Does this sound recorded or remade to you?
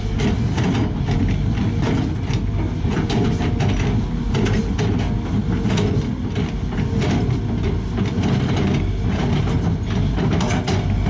recorded